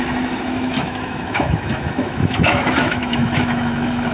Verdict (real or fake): fake